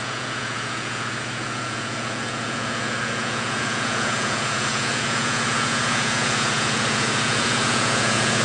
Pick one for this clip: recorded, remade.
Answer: remade